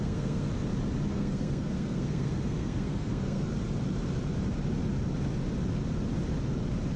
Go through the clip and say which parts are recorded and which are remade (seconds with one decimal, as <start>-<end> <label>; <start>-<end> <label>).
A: 0.0-0.5 remade; 0.5-1.1 recorded; 1.1-3.5 remade; 3.5-7.0 recorded